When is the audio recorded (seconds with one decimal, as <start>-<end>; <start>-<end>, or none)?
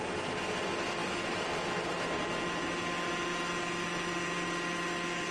0.0-5.3